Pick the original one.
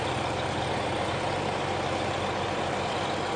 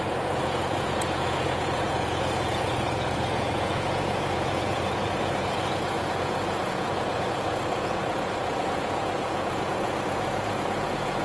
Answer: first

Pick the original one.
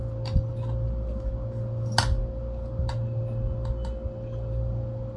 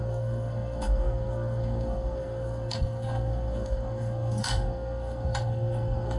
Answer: first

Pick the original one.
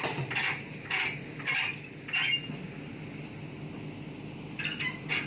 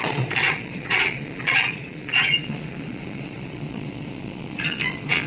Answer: first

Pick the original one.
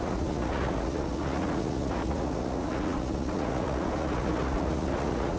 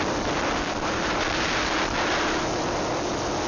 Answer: second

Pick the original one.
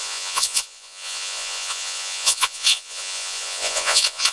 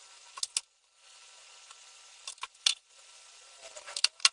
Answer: second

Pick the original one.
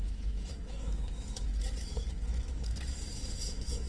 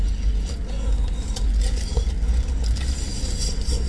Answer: second